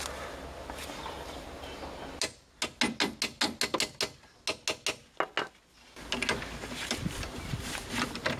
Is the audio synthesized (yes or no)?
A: no